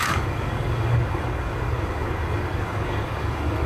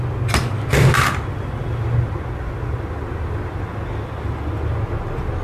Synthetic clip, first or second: first